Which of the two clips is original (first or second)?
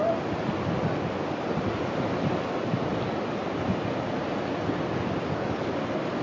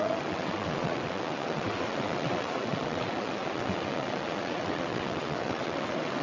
first